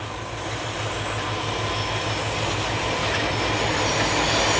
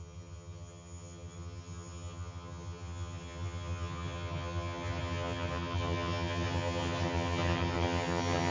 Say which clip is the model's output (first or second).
second